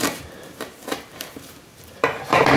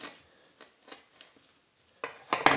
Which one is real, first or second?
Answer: second